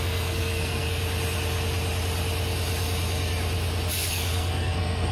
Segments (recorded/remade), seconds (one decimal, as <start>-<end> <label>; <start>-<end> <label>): 0.0-1.0 remade; 1.0-4.1 recorded; 4.1-5.1 remade